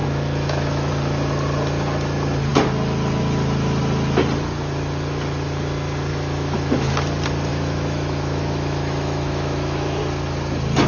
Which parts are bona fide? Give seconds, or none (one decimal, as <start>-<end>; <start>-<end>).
0.9-6.1; 6.9-7.5; 10.0-10.9